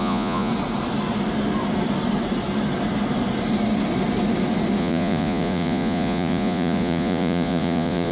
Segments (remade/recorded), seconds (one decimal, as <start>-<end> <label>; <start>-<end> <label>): 0.0-0.5 remade; 0.5-4.8 recorded; 4.8-8.1 remade